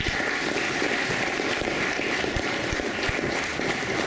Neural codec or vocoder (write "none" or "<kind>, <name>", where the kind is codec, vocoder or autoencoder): vocoder, BigVGAN v2